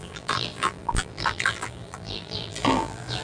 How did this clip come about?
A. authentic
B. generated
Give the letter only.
B